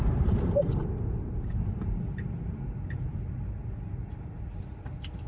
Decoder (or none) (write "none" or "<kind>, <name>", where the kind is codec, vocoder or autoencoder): none